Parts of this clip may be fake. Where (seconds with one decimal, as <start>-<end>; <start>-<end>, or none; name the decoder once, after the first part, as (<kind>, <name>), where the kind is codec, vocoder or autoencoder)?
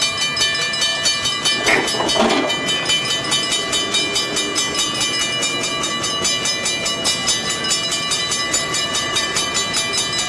8.5-9.5 (vocoder, BigVGAN v2)